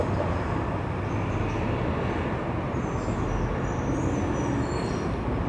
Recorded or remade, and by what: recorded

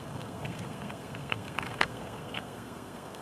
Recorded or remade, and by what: remade, codec, SNAC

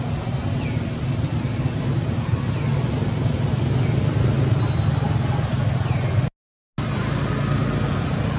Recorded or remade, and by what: recorded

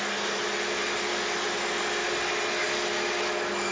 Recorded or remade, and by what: recorded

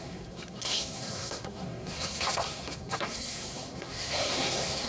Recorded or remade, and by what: remade, codec, SNAC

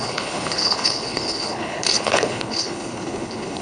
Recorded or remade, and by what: remade, codec, HILCodec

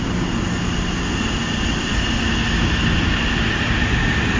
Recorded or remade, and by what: recorded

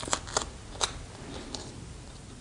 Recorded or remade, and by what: recorded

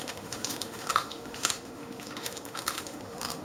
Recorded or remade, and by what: remade, autoencoder, DAC-VAE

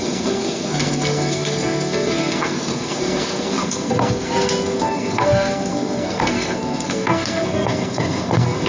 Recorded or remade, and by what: remade, codec, SNAC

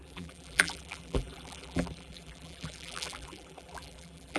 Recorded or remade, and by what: remade, vocoder, BigVGAN v2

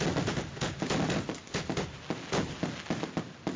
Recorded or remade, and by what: recorded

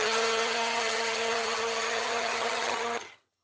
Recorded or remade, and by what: remade, vocoder, HiFi-GAN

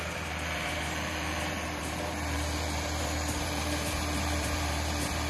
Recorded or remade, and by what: remade, vocoder, BigVGAN v2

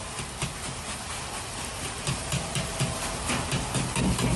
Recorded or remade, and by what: recorded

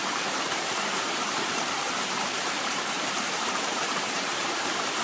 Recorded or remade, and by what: remade, vocoder, BigVGAN v2